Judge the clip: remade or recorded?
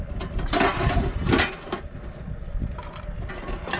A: recorded